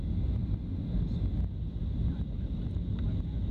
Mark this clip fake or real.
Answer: real